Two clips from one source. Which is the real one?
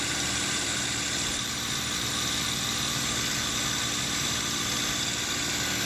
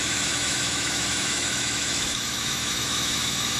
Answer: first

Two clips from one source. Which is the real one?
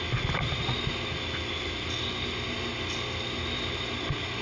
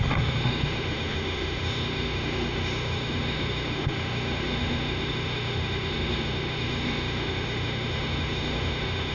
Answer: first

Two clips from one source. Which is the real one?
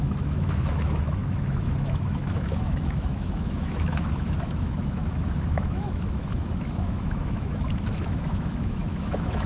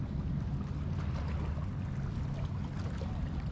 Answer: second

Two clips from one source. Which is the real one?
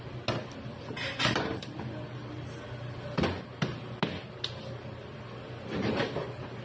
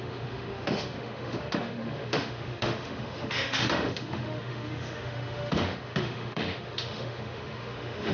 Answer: first